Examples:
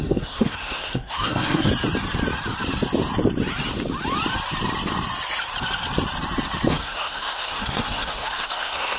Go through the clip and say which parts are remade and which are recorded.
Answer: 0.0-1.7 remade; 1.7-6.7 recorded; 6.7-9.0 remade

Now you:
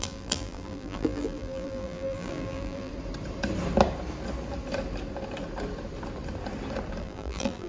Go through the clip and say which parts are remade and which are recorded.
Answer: 0.0-2.9 remade; 2.9-7.0 recorded; 7.0-7.7 remade